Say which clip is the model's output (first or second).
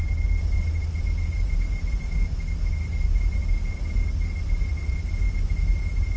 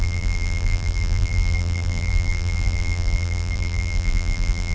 second